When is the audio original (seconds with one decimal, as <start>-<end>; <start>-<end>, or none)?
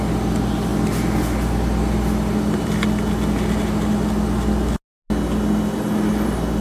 0.0-6.6